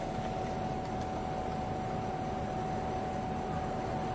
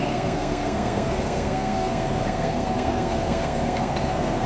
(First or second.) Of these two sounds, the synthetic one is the second